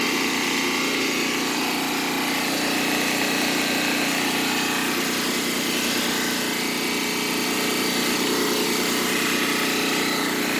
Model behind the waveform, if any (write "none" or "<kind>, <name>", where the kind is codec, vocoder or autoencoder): none